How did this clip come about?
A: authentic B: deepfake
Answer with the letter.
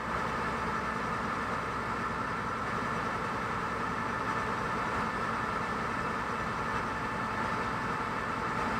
B